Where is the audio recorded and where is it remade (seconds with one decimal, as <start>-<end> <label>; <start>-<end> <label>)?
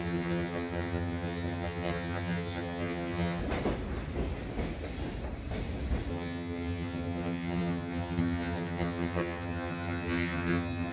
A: 0.0-3.4 remade; 3.4-6.1 recorded; 6.1-10.9 remade